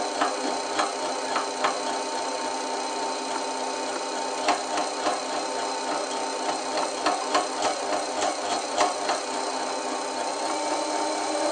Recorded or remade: recorded